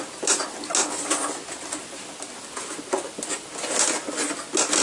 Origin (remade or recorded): recorded